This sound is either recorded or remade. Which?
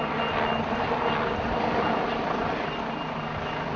recorded